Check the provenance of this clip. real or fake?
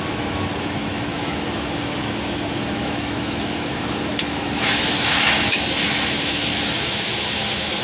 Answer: fake